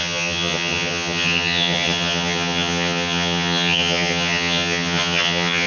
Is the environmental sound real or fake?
fake